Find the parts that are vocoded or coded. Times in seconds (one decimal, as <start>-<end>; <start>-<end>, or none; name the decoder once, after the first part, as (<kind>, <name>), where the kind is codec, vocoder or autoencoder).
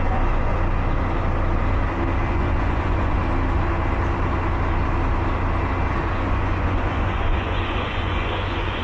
0.0-0.5 (vocoder, Vocos); 2.3-3.2; 6.1-8.8